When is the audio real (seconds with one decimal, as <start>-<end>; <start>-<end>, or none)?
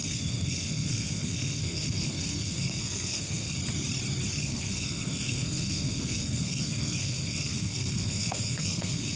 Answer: 3.6-4.4